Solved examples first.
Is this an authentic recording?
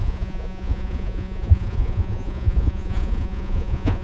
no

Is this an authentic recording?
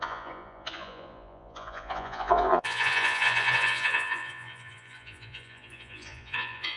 no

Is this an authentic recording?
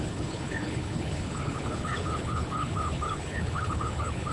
no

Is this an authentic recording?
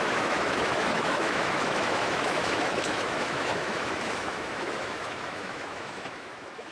no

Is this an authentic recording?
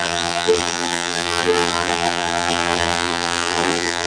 no